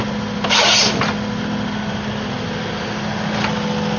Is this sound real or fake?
real